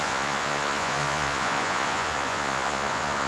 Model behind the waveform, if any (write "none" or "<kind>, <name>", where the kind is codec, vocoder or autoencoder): vocoder, Vocos